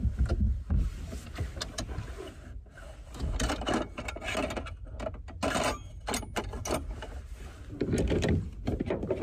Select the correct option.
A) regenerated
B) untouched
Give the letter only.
B